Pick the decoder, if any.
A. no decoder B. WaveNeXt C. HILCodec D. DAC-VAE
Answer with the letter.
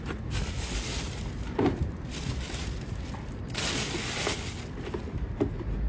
A